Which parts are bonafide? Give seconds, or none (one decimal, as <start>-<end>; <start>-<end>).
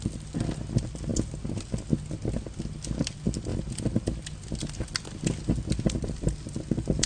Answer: 0.0-7.1